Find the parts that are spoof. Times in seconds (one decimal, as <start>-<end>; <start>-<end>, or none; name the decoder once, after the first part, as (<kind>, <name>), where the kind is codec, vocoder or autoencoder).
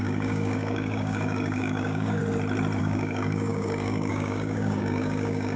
0.0-2.2 (codec, DAC); 2.8-5.6